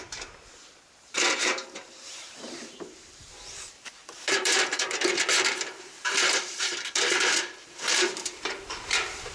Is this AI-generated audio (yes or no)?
yes